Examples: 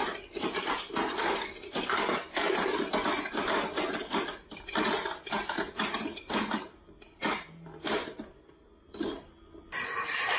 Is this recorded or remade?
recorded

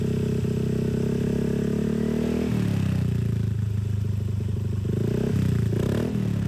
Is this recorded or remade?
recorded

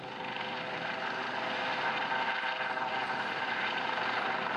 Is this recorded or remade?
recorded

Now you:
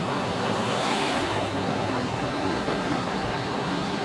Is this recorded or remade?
remade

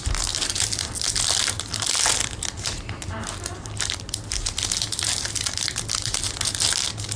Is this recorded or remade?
recorded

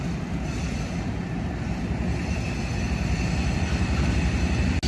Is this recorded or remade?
recorded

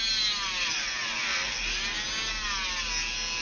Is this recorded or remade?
recorded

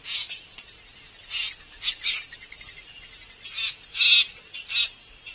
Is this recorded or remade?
recorded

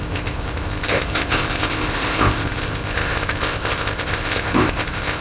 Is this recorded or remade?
remade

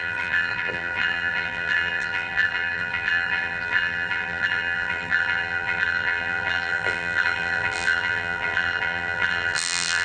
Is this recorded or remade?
remade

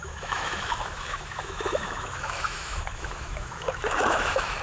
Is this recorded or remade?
remade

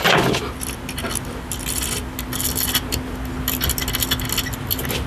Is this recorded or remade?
recorded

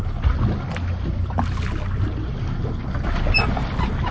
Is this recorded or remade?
recorded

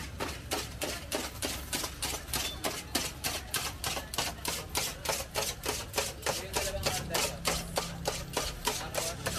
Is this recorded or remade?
recorded